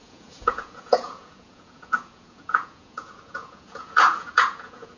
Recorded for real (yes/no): no